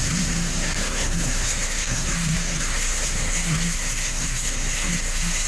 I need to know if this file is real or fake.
fake